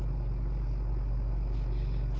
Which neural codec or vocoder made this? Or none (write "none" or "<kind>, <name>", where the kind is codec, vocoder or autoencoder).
none